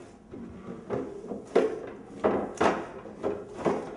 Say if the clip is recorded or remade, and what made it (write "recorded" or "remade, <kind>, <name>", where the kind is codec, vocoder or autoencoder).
recorded